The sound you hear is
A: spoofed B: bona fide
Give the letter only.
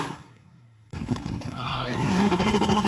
A